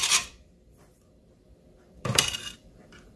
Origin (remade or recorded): remade